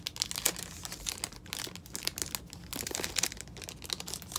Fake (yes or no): no